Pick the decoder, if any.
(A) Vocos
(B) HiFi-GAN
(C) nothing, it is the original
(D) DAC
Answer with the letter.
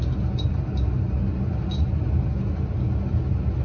C